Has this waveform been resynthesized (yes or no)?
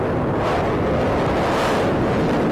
no